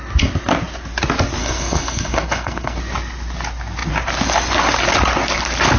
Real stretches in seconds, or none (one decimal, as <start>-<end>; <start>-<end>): 0.0-1.4; 2.8-5.8

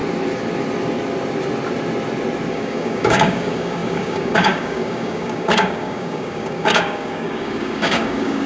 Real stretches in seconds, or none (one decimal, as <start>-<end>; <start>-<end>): 0.0-2.5

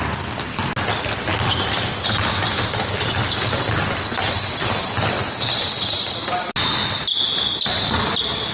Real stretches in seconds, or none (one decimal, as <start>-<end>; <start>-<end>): 0.0-8.5

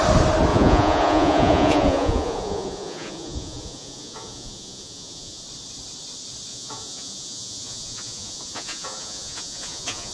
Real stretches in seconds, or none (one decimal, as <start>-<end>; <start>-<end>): 0.0-0.5; 5.4-6.5

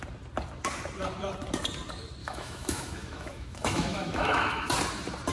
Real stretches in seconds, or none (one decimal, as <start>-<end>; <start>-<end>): 0.0-2.2; 4.7-5.3